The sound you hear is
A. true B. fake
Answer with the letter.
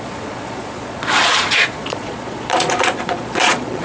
B